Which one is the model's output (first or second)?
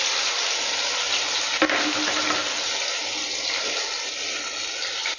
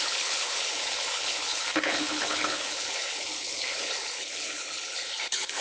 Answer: second